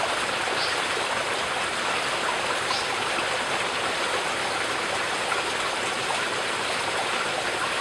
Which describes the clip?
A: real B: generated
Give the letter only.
A